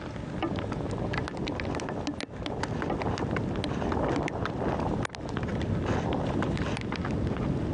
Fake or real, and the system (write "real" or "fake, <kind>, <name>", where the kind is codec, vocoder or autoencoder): real